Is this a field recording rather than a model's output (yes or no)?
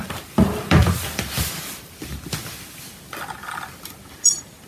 yes